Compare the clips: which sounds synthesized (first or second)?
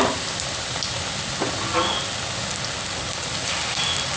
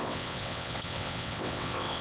second